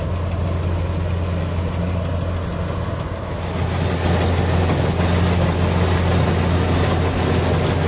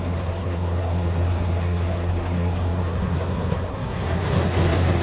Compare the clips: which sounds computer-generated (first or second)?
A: second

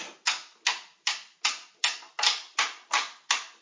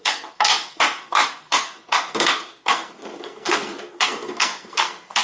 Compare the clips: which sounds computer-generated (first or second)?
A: second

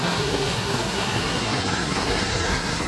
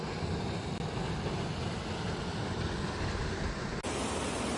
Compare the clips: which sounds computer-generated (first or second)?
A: first